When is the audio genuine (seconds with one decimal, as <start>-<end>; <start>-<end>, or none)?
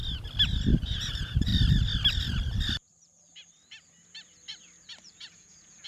0.0-0.8; 1.5-5.0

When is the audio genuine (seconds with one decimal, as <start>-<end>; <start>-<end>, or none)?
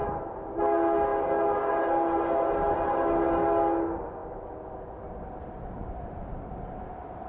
0.0-7.3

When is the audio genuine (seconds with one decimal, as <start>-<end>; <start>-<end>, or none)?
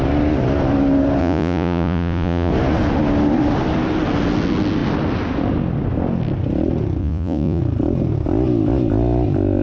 0.0-1.2; 2.5-7.0; 7.6-9.6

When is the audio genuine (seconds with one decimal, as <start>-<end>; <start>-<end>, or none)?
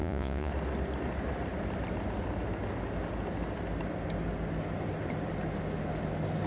0.5-6.5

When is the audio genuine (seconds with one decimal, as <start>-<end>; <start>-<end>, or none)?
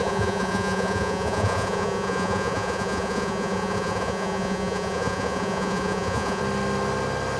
6.4-7.4